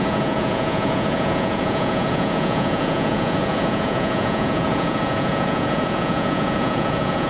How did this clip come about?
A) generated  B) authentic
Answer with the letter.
A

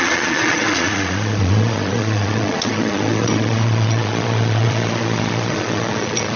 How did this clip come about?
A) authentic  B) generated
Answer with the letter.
B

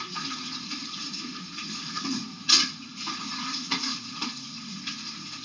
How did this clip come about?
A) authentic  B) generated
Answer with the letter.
B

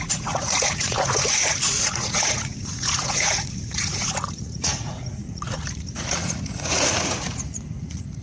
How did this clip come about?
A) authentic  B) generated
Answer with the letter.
B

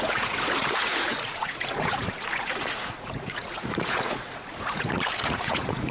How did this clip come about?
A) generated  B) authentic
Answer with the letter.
A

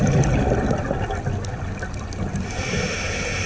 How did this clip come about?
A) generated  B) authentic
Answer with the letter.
B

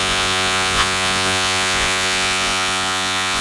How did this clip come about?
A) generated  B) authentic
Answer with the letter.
A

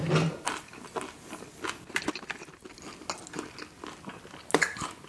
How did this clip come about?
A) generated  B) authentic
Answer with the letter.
B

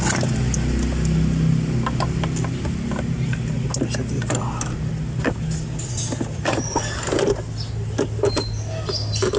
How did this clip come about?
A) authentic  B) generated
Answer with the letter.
A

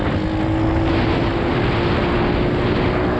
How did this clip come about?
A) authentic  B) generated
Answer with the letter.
A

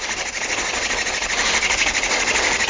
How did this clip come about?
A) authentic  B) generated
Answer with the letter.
A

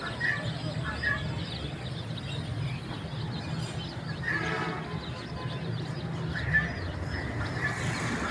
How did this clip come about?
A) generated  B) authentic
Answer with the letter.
B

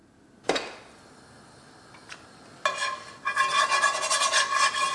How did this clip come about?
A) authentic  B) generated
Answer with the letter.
A